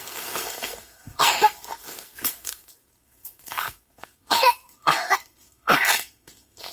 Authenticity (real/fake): fake